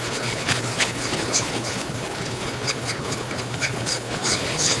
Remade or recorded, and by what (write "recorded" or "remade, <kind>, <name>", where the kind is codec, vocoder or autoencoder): remade, codec, HILCodec